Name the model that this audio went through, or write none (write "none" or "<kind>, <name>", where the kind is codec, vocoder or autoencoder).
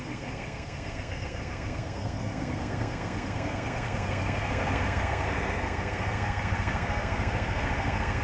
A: codec, SNAC